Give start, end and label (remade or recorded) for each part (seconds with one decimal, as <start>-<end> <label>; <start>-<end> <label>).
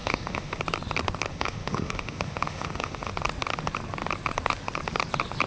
0.0-0.6 remade; 0.6-1.3 recorded; 1.3-3.1 remade; 3.1-5.5 recorded